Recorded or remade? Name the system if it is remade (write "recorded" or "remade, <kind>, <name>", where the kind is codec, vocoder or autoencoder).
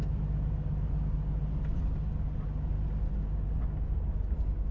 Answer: recorded